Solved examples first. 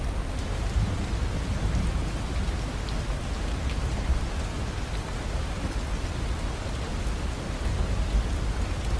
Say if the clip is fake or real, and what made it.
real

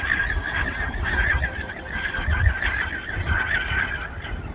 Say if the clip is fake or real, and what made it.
real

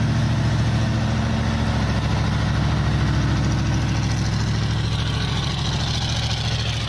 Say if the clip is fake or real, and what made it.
real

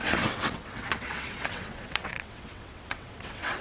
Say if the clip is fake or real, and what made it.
fake, vocoder, WaveNeXt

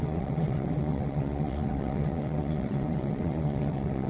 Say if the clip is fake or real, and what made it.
fake, vocoder, WaveNeXt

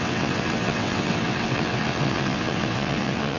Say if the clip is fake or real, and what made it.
fake, vocoder, WaveNeXt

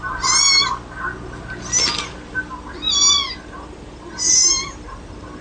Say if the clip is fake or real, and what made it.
real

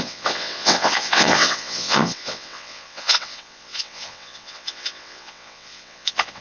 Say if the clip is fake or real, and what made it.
fake, vocoder, WaveNeXt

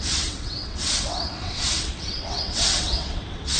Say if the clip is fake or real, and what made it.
fake, vocoder, WaveNeXt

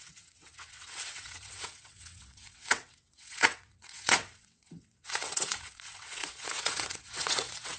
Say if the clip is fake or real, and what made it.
fake, vocoder, WaveNeXt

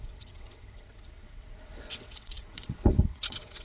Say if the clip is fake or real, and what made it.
fake, vocoder, WaveNeXt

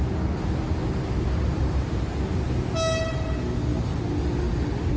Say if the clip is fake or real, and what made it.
real